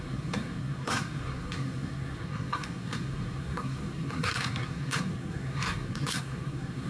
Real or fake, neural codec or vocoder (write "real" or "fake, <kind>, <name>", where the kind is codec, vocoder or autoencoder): fake, codec, SNAC